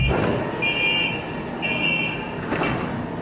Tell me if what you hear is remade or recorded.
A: recorded